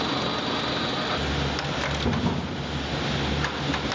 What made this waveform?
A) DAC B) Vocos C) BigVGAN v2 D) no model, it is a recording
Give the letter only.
D